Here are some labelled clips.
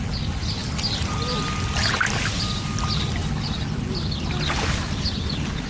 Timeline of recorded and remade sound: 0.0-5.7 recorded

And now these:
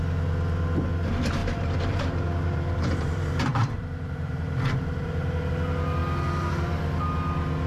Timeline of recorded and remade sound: 0.0-1.4 recorded; 1.4-5.5 remade; 5.5-7.7 recorded

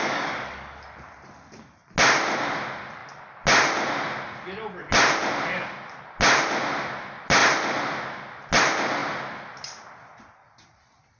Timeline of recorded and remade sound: 0.0-0.8 remade; 0.8-11.2 recorded

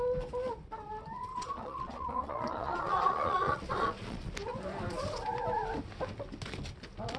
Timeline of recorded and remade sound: 0.0-1.3 recorded; 1.3-4.3 remade; 4.3-7.2 recorded

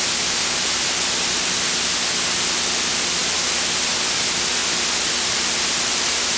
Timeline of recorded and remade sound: 0.0-6.4 recorded

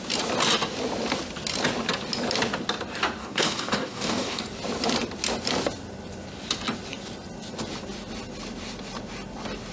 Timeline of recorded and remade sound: 0.0-3.2 recorded; 3.2-4.4 remade; 4.4-9.7 recorded